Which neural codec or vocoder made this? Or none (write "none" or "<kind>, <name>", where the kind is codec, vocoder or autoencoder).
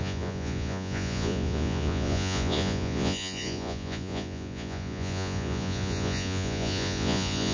vocoder, Vocos